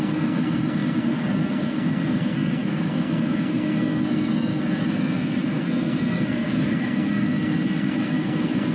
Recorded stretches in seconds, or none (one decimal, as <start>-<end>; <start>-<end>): none

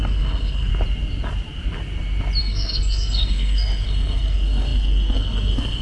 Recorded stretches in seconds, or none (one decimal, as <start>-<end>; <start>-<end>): 0.7-2.4

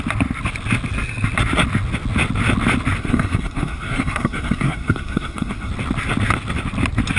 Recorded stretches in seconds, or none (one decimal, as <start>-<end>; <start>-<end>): 0.0-3.0; 5.7-7.2

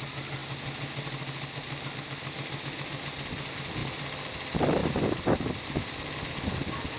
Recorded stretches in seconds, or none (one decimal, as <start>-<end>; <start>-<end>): 0.0-7.0

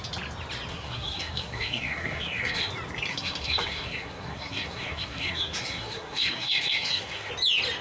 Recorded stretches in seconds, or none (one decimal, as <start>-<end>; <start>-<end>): 0.0-0.7; 2.7-3.1; 7.3-7.8

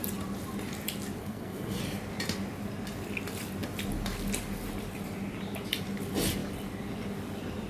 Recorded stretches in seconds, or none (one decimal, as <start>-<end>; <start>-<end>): 0.0-1.2; 1.8-7.7

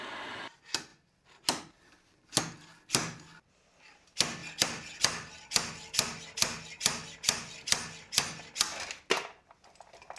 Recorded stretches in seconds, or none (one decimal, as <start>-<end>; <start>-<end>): 0.0-10.2

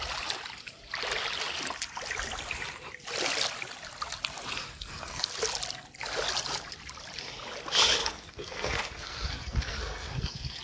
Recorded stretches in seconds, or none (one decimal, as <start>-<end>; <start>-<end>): 0.0-4.7; 5.3-8.0